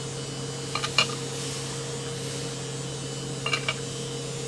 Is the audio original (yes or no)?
yes